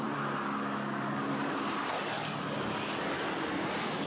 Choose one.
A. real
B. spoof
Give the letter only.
A